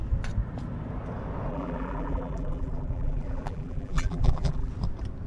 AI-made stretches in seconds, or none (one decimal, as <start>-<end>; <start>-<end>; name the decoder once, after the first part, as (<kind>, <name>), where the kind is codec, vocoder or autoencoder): 1.5-4.7 (vocoder, BigVGAN v2)